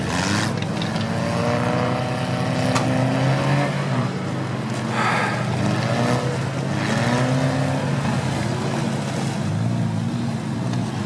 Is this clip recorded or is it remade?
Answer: recorded